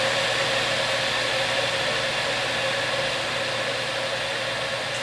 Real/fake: real